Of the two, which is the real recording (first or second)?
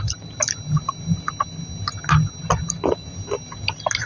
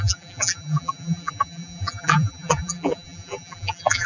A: first